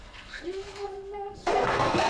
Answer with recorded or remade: remade